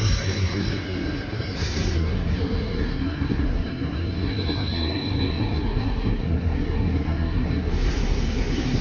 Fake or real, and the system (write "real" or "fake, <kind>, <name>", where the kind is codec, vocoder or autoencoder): fake, codec, SNAC